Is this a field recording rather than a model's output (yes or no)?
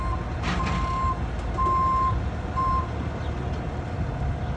yes